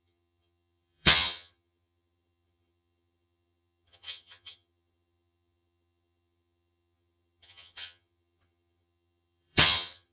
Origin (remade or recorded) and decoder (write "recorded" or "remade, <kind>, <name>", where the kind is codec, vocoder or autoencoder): remade, vocoder, HiFi-GAN